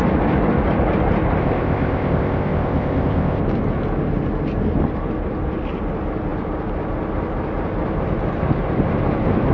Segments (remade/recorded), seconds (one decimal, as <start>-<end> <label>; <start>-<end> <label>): 0.0-1.4 recorded; 1.4-3.4 remade; 3.4-9.5 recorded